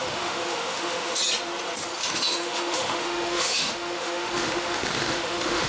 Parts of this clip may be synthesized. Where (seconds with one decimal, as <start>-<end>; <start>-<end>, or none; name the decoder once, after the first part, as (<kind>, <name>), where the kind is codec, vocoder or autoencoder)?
0.0-1.2 (autoencoder, DAC-VAE); 2.0-5.7